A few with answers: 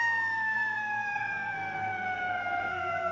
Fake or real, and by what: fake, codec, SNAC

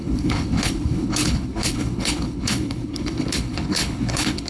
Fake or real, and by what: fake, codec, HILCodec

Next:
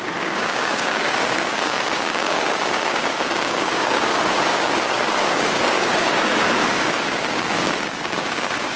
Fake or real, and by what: fake, codec, DAC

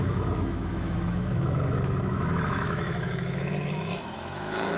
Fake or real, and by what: fake, autoencoder, DAC-VAE